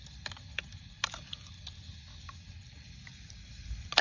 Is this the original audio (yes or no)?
yes